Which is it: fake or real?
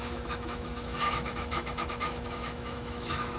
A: fake